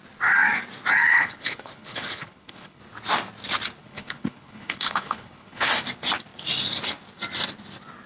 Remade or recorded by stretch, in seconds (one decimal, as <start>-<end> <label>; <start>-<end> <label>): 0.0-1.1 recorded; 1.1-2.8 remade; 2.8-3.8 recorded; 3.8-5.7 remade; 5.7-8.1 recorded